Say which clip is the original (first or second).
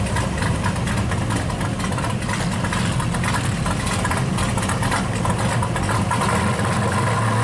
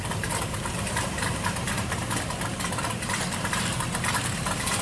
first